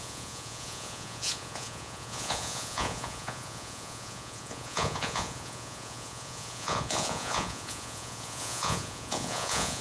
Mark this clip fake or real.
fake